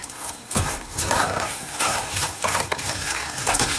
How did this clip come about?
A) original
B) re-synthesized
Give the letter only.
B